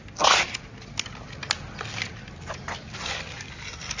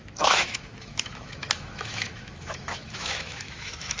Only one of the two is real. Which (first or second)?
first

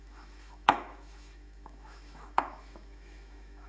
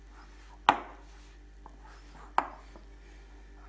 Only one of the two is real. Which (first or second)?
second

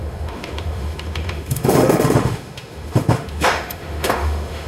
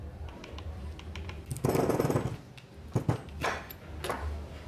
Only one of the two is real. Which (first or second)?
second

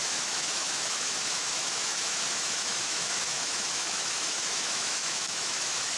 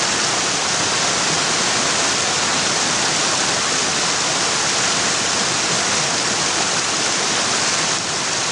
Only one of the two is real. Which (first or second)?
second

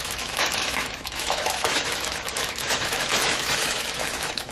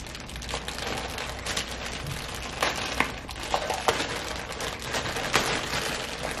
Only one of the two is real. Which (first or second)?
second